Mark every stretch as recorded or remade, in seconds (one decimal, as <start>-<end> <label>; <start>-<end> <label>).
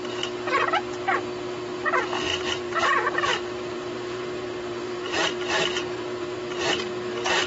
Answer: 0.0-2.3 recorded; 2.3-6.8 remade; 6.8-7.5 recorded